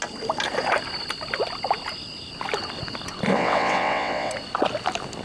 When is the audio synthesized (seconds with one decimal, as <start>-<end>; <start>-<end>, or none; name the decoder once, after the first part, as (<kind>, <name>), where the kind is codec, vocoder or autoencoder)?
3.3-4.3 (vocoder, WaveNeXt)